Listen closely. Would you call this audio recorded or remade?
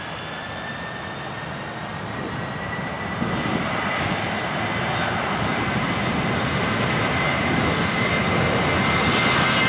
recorded